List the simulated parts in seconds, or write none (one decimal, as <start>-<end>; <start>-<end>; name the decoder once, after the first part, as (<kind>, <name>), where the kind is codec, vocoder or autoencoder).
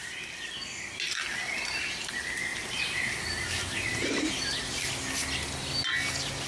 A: 0.0-0.6 (vocoder, BigVGAN v2); 2.5-4.6